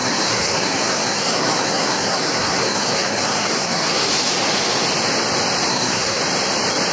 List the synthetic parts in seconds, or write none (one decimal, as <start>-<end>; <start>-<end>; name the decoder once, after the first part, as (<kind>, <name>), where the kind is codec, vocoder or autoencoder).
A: 0.0-4.1 (codec, SNAC); 5.7-6.2